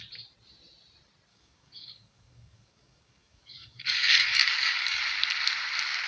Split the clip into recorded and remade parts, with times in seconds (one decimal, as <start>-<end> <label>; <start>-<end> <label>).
0.0-1.3 recorded; 1.3-5.0 remade; 5.0-6.1 recorded